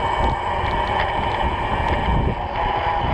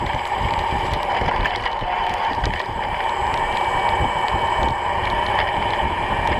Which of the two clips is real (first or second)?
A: first